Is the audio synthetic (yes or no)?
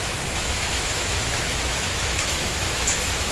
yes